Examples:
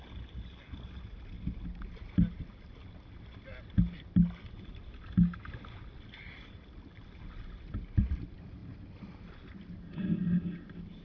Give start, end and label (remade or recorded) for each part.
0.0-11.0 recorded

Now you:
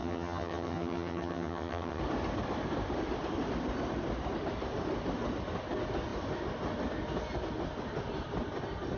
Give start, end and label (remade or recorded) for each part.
0.0-2.0 remade; 2.0-9.0 recorded

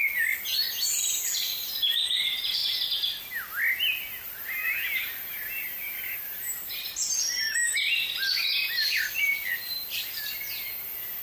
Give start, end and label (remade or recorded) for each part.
0.0-11.2 recorded

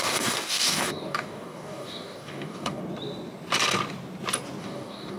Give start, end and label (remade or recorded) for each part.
0.0-2.8 remade; 2.8-4.6 recorded; 4.6-5.2 remade

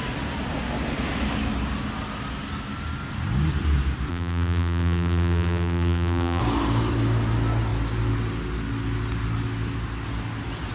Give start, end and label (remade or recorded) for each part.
0.0-4.1 recorded; 4.1-6.4 remade; 6.4-10.7 recorded